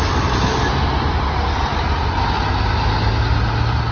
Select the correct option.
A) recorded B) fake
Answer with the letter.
A